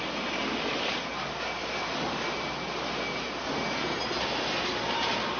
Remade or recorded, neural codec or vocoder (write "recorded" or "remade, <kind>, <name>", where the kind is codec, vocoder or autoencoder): recorded